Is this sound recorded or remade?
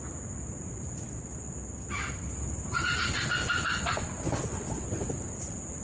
recorded